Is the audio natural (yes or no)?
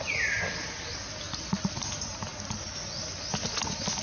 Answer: yes